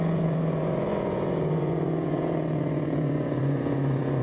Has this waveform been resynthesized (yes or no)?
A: yes